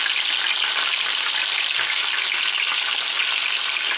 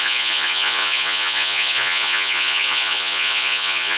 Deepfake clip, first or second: second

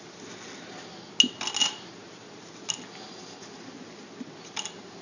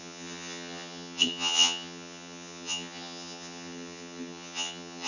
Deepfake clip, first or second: second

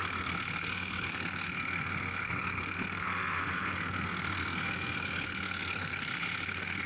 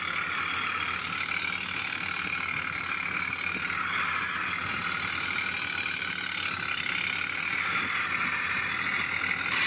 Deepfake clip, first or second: first